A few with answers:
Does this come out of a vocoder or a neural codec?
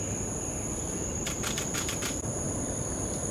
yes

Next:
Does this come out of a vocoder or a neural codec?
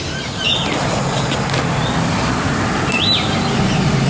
no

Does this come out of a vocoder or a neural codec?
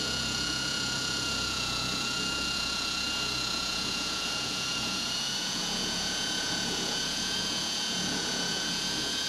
yes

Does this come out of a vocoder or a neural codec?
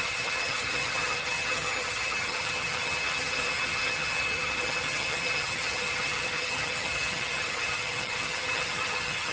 yes